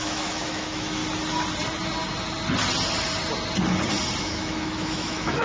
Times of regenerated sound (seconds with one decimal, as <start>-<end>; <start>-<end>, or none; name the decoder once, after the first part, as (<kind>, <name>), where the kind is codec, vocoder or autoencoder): 0.0-1.0 (autoencoder, DAC-VAE); 4.2-5.4